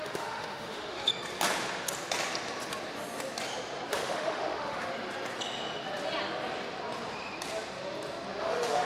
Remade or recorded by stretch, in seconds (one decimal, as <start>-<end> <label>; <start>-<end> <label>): 0.0-1.1 remade; 1.1-3.9 recorded; 3.9-4.9 remade; 4.9-8.4 recorded; 8.4-8.8 remade